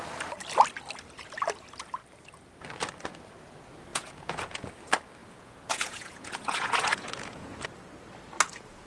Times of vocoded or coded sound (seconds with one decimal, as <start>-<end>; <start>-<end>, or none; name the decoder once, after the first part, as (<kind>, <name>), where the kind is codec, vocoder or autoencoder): 3.9-4.7 (vocoder, Vocos); 5.2-7.6